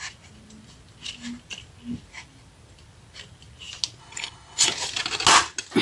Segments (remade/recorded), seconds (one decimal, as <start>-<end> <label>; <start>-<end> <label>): 0.0-4.0 recorded; 4.0-4.7 remade; 4.7-5.8 recorded